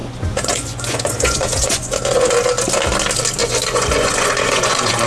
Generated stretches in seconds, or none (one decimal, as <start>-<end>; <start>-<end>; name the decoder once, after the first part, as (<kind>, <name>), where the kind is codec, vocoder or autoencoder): 0.0-2.3 (vocoder, Vocos); 3.4-5.1